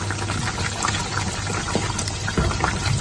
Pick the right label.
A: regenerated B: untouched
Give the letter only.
B